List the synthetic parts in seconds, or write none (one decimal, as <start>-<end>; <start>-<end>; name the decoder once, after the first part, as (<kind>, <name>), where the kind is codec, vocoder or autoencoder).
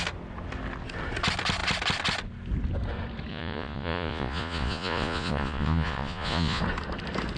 3.3-6.6 (vocoder, Vocos)